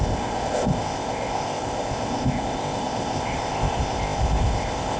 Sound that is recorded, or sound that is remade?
remade